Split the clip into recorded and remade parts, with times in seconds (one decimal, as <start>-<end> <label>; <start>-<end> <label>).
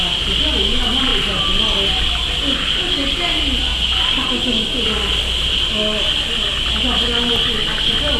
0.0-8.2 recorded